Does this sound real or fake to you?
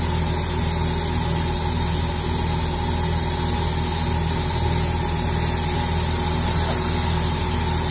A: real